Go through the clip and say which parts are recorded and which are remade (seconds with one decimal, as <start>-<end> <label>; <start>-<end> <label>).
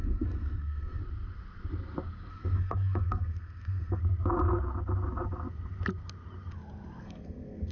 0.0-1.0 remade; 1.0-2.3 recorded; 2.3-4.0 remade; 4.0-7.0 recorded; 7.0-7.7 remade